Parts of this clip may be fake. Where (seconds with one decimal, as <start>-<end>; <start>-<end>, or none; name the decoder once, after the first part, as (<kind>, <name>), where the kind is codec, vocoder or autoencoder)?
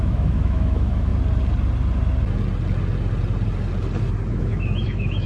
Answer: 0.0-1.1 (autoencoder, DAC-VAE); 4.3-5.3